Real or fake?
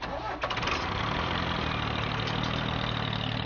real